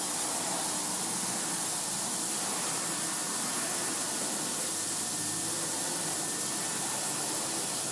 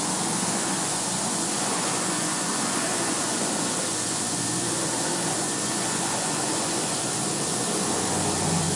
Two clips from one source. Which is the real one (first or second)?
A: first